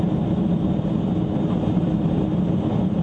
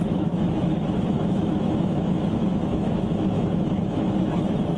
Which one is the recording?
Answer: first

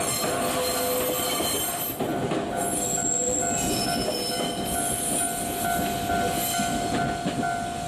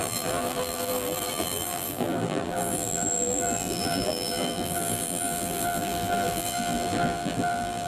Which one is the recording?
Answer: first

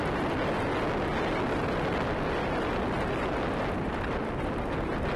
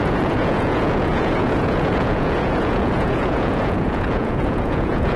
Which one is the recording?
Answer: first